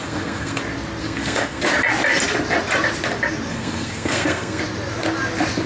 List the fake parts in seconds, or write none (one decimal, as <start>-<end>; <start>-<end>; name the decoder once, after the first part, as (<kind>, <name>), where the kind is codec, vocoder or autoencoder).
0.0-0.6 (codec, SNAC); 1.0-1.6; 3.5-4.6